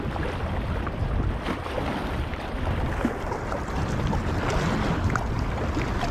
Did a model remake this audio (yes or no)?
no